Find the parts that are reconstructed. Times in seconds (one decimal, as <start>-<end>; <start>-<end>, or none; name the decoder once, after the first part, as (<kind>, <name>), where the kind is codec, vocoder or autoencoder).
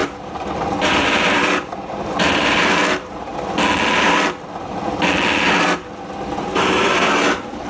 0.5-3.3 (vocoder, BigVGAN v2); 6.4-7.7